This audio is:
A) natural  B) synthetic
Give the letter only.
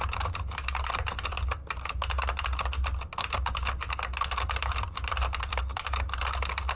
A